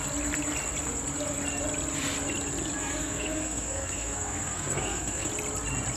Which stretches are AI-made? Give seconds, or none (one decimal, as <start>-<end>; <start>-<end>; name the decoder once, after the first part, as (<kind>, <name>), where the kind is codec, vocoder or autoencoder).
2.8-5.3 (codec, SNAC)